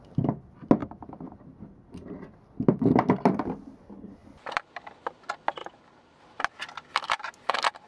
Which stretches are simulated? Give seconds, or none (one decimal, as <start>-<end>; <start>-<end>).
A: 4.2-5.0; 5.6-6.2